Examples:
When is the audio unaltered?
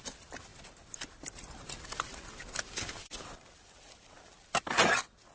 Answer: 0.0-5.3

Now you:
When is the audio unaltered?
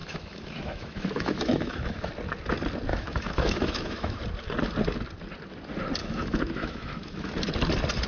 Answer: 2.1-2.9; 4.2-6.0; 7.3-8.1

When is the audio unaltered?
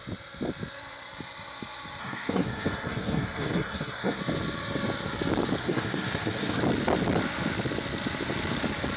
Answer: 0.0-2.0; 4.2-5.6; 6.6-9.0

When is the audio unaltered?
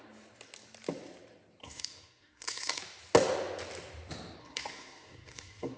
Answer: 0.0-1.6; 2.8-4.4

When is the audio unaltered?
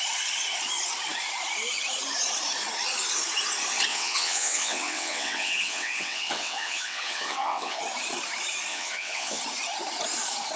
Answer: 0.0-3.9; 7.8-8.7; 9.4-10.6